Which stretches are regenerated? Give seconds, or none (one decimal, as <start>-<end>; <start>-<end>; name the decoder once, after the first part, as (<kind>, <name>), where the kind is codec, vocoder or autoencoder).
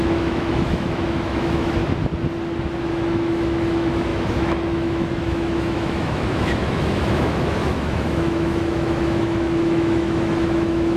0.0-1.8 (autoencoder, DAC-VAE); 2.8-11.0